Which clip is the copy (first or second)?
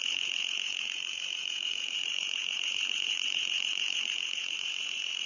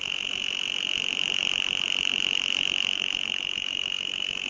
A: first